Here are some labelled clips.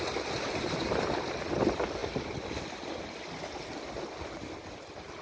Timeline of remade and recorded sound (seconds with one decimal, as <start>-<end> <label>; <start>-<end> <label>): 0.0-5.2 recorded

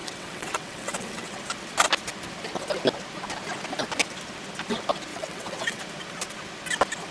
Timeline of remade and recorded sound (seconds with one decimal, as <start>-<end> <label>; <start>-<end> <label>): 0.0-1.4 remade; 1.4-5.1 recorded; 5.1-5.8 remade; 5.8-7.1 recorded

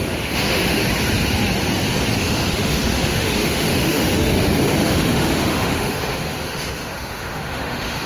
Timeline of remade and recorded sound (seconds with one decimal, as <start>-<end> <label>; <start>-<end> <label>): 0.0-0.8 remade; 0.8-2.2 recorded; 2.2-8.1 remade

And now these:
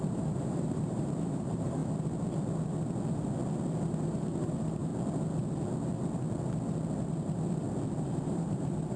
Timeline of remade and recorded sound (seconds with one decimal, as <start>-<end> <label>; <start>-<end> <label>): 0.0-1.8 remade; 1.8-3.9 recorded; 3.9-4.9 remade; 4.9-8.0 recorded; 8.0-9.0 remade

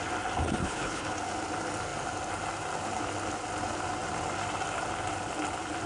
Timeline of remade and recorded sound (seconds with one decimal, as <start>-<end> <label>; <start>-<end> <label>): 0.0-0.6 recorded; 0.6-1.1 remade; 1.1-5.9 recorded

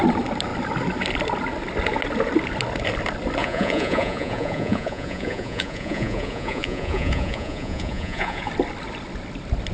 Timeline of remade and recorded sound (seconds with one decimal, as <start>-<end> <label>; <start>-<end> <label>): 0.0-3.4 recorded; 3.4-8.5 remade; 8.5-9.7 recorded